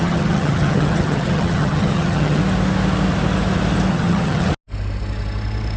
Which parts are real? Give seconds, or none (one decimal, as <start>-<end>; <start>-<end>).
2.4-3.9; 4.5-5.8